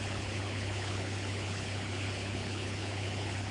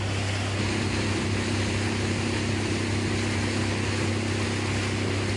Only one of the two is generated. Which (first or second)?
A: first